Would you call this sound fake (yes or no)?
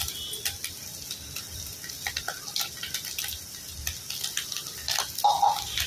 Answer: no